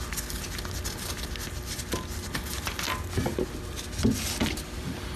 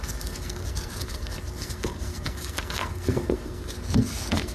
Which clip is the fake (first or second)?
second